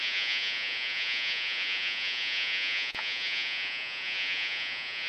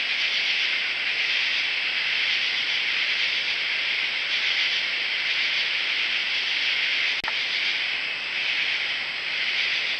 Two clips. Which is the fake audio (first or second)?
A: first